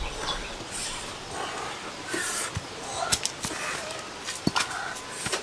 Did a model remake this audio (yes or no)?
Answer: no